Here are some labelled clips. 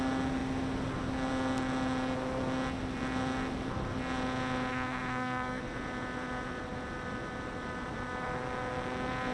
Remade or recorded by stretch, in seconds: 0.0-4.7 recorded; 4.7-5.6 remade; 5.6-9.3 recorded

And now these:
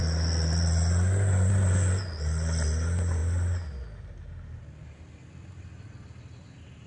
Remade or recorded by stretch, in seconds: 0.0-6.9 recorded